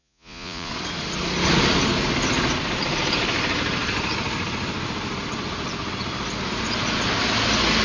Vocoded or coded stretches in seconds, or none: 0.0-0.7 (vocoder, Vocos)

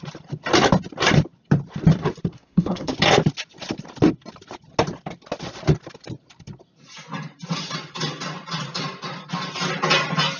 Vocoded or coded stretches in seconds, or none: 2.3-2.9 (codec, SNAC)

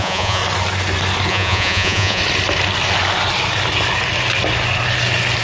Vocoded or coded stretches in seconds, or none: 0.0-0.4 (vocoder, Vocos); 1.3-2.2

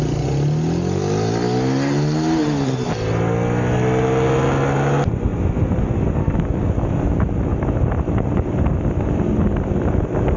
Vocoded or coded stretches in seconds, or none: 2.4-2.9 (vocoder, BigVGAN v2); 7.5-8.7

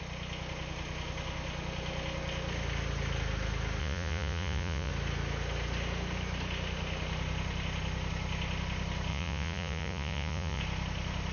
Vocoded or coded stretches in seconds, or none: 3.8-4.9 (vocoder, Vocos); 9.1-10.6

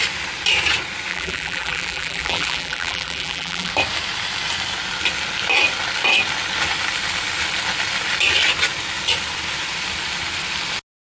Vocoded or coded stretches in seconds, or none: 1.1-3.7 (vocoder, BigVGAN v2)